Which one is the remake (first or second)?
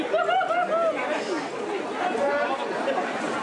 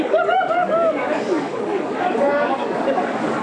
second